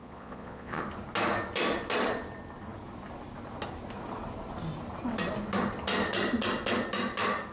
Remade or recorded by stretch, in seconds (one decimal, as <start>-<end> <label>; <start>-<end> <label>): 0.0-0.8 remade; 0.8-7.5 recorded